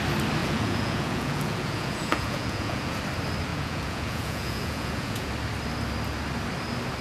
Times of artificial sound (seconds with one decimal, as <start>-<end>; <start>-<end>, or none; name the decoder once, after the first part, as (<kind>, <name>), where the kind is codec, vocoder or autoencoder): 0.4-3.0 (vocoder, Vocos); 3.5-5.3